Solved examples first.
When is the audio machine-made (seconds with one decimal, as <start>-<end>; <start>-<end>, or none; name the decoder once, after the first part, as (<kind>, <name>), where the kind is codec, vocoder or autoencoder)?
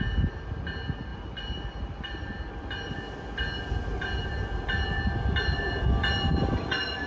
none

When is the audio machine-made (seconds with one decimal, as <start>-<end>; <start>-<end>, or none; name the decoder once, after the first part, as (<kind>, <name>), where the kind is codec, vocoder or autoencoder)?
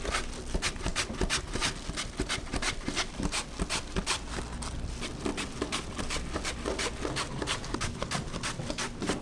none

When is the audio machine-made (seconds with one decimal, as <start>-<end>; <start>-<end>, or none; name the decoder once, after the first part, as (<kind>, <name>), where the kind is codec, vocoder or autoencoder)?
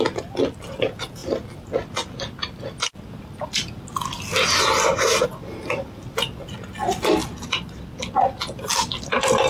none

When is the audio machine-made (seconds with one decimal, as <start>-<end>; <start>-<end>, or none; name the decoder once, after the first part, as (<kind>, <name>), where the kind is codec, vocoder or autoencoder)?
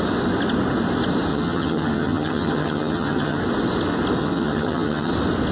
1.3-3.4 (vocoder, HiFi-GAN); 4.2-5.1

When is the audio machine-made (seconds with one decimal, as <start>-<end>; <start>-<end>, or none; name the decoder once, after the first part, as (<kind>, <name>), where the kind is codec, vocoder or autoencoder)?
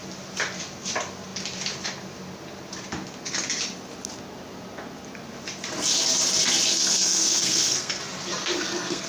6.7-8.0 (codec, SNAC); 8.4-9.1